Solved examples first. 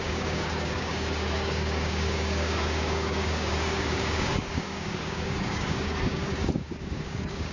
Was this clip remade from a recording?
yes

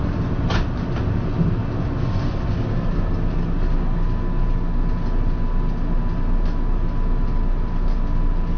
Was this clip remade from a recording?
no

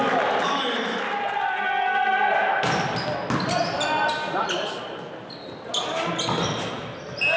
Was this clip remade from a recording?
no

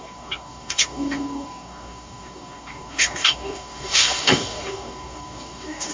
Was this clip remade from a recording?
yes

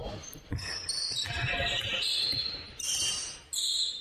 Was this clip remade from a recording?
no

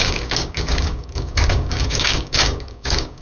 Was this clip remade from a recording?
yes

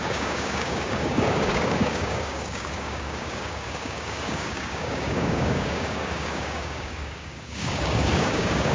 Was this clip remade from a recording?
yes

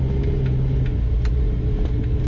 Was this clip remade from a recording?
no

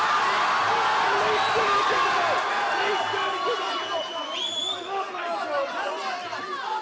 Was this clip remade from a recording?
no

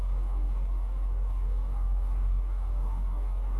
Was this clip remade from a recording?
yes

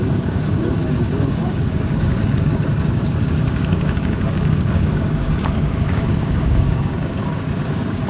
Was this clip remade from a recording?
yes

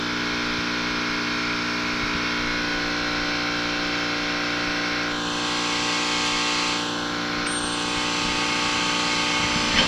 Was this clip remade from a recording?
no